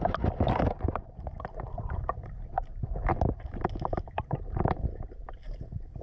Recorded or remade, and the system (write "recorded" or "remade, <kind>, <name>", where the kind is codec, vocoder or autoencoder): remade, vocoder, BigVGAN v2